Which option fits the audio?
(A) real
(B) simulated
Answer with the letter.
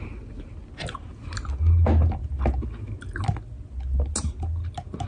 A